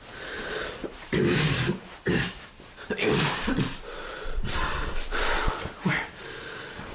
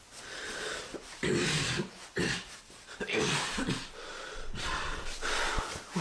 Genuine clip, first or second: second